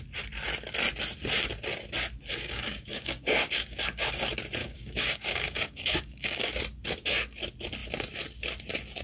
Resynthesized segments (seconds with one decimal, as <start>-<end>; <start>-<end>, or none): 2.3-4.1; 4.6-6.6